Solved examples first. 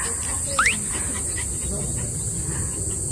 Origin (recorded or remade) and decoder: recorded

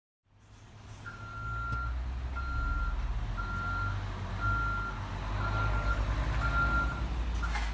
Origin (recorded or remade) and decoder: recorded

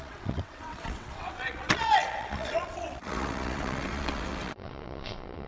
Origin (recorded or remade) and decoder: remade, vocoder, WaveNeXt